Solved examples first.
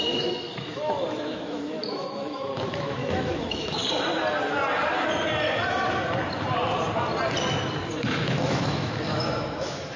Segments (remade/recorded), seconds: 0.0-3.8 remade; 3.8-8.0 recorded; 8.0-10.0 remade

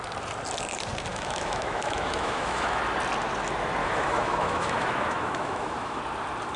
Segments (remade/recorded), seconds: 0.0-1.1 recorded; 1.1-2.8 remade; 2.8-3.8 recorded; 3.8-6.0 remade; 6.0-6.6 recorded

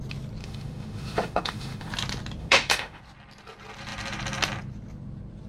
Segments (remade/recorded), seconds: 0.0-0.4 recorded; 0.4-1.9 remade; 1.9-2.4 recorded; 2.4-3.0 remade; 3.0-5.5 recorded